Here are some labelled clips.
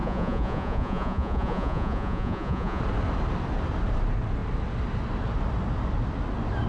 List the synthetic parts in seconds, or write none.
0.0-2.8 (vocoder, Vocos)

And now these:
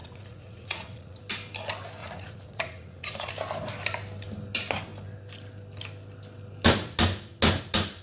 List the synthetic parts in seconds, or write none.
0.0-1.2 (vocoder, Vocos); 2.0-3.3

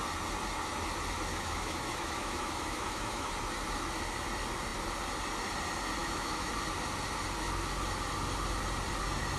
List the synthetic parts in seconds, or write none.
1.3-3.3 (autoencoder, DAC-VAE); 6.0-6.5

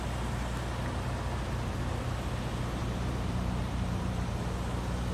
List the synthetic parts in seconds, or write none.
2.8-4.4 (vocoder, BigVGAN v2)